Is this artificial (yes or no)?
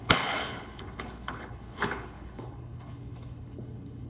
yes